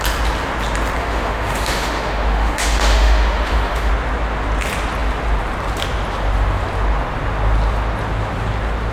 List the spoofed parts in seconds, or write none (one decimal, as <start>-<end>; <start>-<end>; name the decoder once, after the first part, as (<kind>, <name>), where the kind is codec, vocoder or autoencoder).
1.0-3.9 (autoencoder, DAC-VAE)

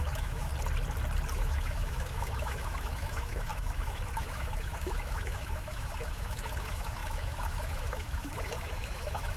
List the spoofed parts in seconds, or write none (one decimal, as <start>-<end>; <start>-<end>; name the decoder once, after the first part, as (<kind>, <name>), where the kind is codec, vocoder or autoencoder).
0.0-0.5 (autoencoder, DAC-VAE); 1.3-9.4

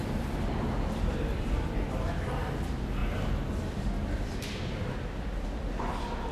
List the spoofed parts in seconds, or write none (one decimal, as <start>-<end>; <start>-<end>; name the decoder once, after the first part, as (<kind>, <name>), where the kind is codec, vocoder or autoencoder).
none

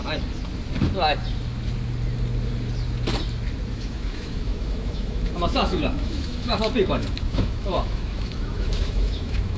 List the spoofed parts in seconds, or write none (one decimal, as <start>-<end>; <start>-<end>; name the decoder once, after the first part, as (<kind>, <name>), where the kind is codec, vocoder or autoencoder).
3.7-9.6 (autoencoder, DAC-VAE)

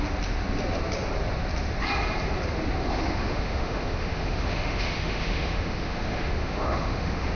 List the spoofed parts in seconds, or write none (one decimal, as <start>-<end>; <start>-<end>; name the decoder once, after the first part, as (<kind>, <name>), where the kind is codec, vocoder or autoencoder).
2.8-7.3 (autoencoder, DAC-VAE)

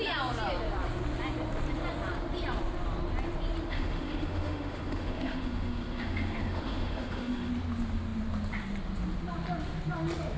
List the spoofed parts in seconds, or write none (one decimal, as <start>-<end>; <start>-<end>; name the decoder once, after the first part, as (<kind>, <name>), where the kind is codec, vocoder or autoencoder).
3.7-7.5 (autoencoder, DAC-VAE)

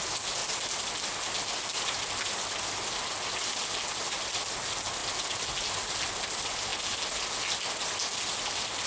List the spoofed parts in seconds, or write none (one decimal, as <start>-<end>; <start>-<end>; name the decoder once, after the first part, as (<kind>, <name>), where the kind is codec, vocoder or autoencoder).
none